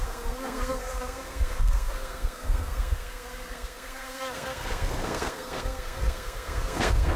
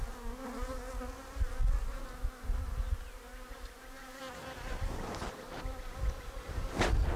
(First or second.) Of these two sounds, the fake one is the first